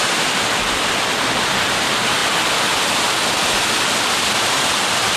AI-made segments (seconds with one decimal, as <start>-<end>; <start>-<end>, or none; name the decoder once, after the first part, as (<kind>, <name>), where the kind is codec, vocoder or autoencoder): none